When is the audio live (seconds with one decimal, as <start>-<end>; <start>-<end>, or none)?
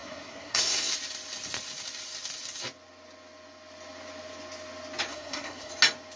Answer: 0.9-5.1; 5.7-6.2